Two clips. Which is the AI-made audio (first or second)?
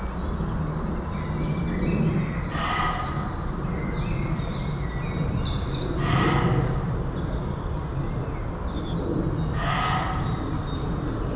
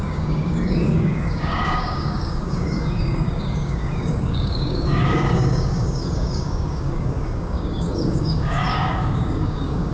second